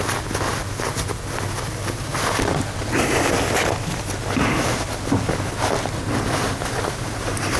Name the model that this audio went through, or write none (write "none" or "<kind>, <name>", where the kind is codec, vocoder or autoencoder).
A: none